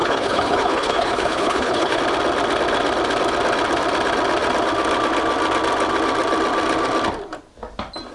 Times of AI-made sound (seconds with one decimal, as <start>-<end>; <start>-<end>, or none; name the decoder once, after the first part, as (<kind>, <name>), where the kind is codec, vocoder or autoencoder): 0.0-2.0 (codec, HILCodec)